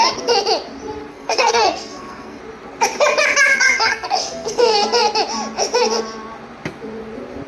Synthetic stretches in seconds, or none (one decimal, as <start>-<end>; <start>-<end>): 1.1-2.4; 3.5-4.6

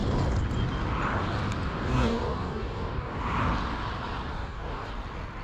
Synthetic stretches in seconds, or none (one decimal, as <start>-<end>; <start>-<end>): 1.7-3.2; 4.3-4.9

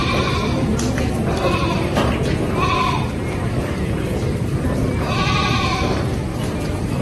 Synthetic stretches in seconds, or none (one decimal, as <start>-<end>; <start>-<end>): 0.0-6.3

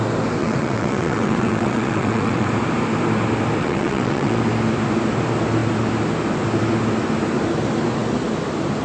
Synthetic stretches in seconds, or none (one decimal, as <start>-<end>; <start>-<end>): 0.4-2.5; 3.6-4.4

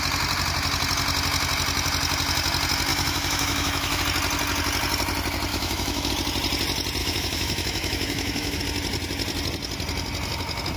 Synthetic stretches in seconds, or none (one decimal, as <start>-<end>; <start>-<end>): 2.9-4.0; 5.5-6.1; 7.0-8.6